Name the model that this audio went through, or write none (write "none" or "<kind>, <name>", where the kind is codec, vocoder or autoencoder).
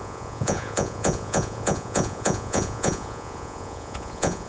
vocoder, Vocos